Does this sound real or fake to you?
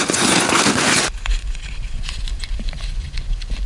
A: fake